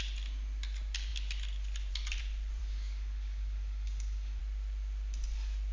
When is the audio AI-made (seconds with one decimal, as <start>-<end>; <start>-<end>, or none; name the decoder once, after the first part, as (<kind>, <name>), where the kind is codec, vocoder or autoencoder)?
2.6-4.4 (codec, DAC)